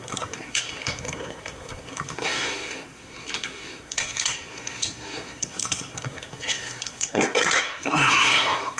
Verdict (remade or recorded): remade